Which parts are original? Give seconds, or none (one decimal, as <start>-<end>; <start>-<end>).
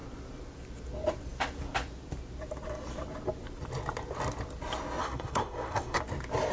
0.0-5.0; 6.0-6.5